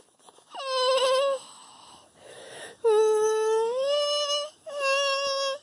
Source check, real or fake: fake